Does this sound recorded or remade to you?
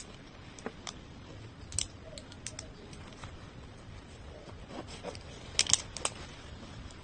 recorded